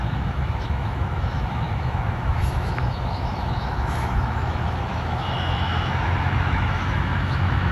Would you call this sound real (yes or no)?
no